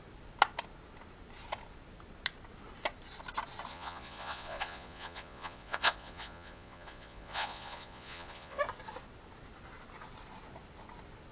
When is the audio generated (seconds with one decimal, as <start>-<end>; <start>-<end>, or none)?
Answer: 3.7-8.6